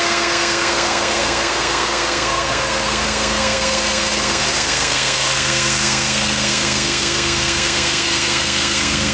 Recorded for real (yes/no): no